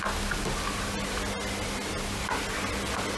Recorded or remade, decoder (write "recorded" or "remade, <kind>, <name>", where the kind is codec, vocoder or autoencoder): recorded